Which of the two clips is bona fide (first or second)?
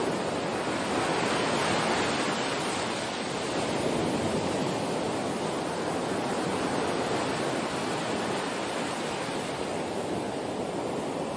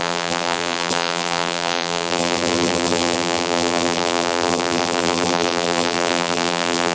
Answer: first